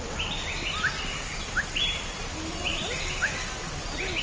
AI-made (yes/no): no